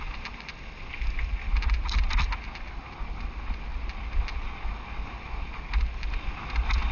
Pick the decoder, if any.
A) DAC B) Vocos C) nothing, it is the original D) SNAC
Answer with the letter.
C